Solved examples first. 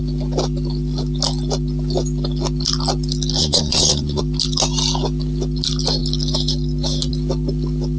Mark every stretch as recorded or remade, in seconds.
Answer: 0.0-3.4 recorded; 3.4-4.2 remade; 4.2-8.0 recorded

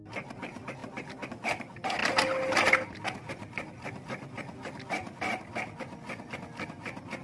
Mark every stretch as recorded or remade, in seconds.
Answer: 0.0-7.2 recorded

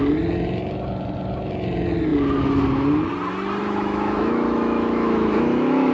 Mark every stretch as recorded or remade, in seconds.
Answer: 0.0-3.6 recorded; 3.6-5.9 remade

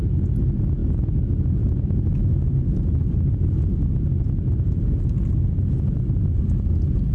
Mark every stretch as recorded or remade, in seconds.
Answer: 0.0-7.1 recorded

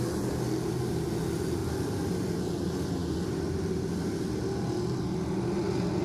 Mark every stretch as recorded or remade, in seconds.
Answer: 0.0-1.6 recorded; 1.6-2.4 remade; 2.4-6.0 recorded